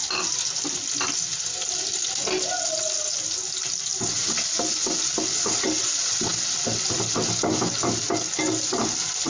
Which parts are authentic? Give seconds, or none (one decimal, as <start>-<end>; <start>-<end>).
0.0-9.3